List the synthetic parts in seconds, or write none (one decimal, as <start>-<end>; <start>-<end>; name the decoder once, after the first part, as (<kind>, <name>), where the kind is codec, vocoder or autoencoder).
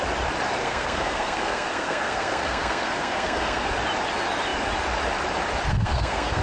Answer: 0.6-3.7 (codec, SNAC); 5.7-6.4